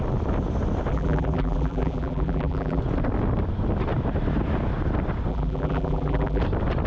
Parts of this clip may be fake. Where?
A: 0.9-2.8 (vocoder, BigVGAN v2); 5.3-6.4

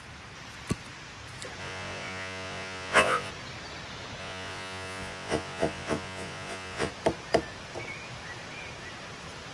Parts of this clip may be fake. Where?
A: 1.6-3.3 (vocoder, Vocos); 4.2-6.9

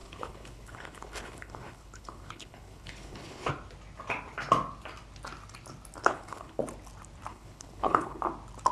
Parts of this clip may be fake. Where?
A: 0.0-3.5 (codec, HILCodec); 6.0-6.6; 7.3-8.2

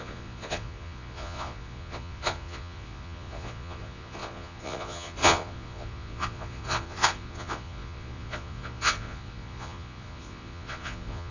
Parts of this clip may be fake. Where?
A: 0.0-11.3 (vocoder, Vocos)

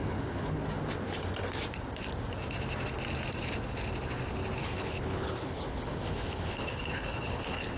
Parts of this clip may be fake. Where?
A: 0.0-0.6 (codec, HILCodec); 4.6-7.8